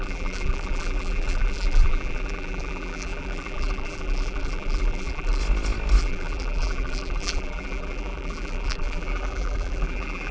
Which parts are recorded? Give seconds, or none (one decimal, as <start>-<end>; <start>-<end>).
5.4-6.0